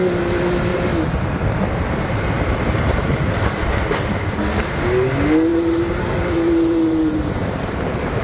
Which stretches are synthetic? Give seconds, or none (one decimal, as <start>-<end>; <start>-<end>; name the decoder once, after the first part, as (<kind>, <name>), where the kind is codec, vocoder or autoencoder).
0.7-3.7 (vocoder, BigVGAN v2); 5.5-8.2